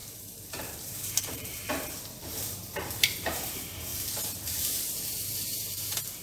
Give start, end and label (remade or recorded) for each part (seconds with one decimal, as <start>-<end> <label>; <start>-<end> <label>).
0.0-1.6 remade; 1.6-3.1 recorded; 3.1-3.9 remade; 3.9-5.3 recorded; 5.3-6.2 remade